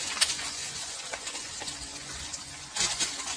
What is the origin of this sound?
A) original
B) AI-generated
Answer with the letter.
B